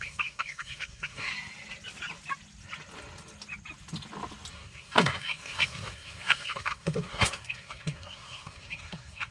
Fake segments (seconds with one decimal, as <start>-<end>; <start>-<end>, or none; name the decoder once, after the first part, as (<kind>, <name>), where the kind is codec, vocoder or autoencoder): 0.0-1.3 (codec, SNAC); 4.5-9.3